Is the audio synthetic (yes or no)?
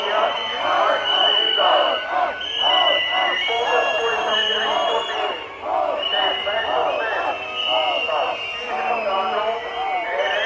yes